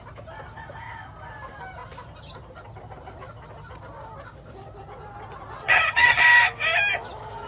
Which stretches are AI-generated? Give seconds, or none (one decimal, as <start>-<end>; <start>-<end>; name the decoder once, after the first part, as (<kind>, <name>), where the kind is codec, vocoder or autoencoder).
5.6-6.2 (vocoder, HiFi-GAN)